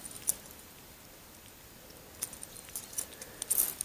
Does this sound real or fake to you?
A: real